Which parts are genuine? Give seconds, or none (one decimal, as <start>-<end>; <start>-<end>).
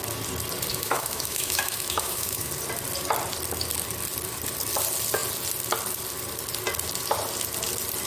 0.0-0.7; 2.5-8.1